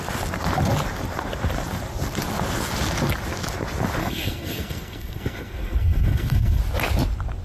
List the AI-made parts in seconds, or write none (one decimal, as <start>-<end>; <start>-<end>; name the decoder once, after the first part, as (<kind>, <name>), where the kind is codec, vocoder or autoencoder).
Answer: 4.0-6.6 (codec, SNAC)